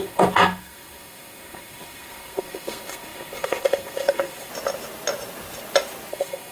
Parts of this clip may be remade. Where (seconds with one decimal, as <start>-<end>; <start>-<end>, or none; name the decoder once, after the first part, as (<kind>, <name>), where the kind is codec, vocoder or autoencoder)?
0.0-4.5 (codec, SNAC); 6.1-6.5